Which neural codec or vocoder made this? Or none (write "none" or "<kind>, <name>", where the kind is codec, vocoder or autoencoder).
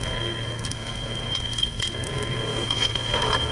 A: codec, SNAC